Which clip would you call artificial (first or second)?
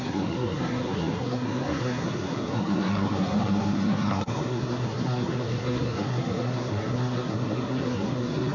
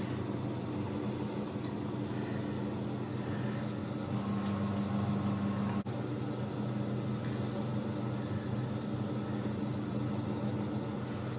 first